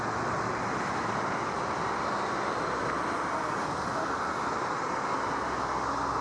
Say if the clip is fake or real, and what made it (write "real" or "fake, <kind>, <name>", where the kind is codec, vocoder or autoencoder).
real